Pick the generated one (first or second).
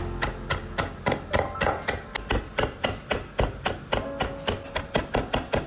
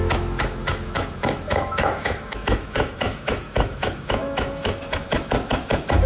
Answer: second